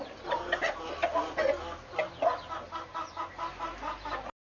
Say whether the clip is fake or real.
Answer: real